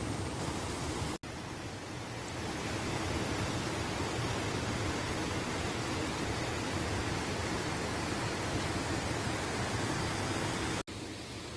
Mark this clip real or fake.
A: real